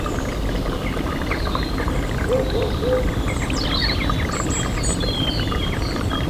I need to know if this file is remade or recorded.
recorded